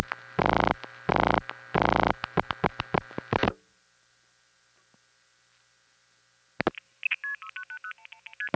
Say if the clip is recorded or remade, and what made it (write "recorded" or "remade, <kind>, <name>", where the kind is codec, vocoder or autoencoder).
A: recorded